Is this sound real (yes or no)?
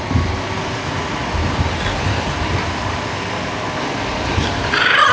yes